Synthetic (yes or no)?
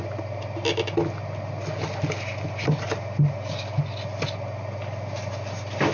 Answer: no